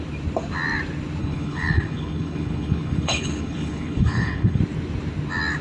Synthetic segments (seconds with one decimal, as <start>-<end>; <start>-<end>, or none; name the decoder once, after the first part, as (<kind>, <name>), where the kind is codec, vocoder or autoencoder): 1.2-4.6 (codec, HILCodec)